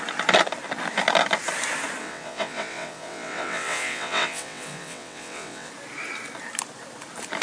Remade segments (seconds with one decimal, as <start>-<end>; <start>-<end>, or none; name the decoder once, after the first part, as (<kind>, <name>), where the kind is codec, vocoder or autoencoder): 2.0-5.7 (vocoder, WaveNeXt)